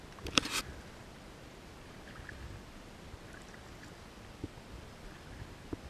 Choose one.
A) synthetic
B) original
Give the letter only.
B